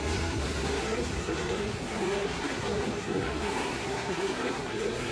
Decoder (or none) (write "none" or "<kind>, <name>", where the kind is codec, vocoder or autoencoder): codec, SNAC